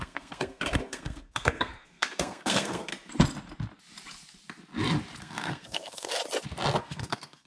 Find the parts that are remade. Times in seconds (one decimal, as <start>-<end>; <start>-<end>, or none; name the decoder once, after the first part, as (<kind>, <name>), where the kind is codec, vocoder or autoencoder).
0.0-2.9 (codec, SNAC); 5.2-6.2; 6.8-7.5